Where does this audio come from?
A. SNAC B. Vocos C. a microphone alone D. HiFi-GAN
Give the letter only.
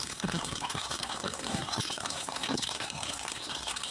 A